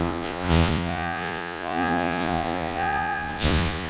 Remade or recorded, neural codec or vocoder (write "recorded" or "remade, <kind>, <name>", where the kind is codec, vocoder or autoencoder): remade, vocoder, Vocos